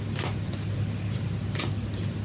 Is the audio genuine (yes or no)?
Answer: yes